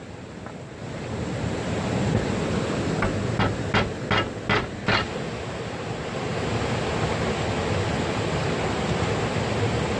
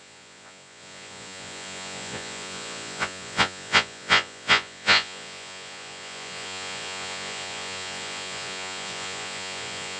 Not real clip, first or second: second